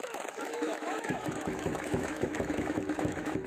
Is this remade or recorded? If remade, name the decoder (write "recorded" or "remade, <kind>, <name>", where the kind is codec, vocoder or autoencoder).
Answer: remade, autoencoder, DAC-VAE